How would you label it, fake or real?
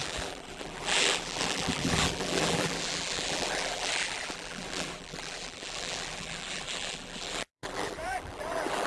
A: fake